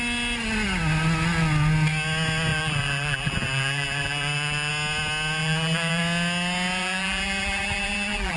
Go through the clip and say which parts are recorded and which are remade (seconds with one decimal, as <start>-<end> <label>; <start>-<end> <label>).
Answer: 0.0-2.5 recorded; 2.5-4.7 remade; 4.7-5.4 recorded; 5.4-6.0 remade; 6.0-6.8 recorded; 6.8-8.4 remade